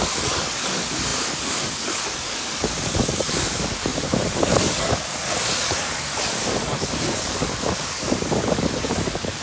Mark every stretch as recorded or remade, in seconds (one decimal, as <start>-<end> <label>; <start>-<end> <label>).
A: 0.0-9.4 remade